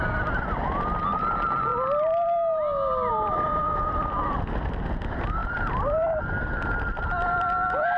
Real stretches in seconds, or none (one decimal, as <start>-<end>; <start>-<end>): 0.0-8.0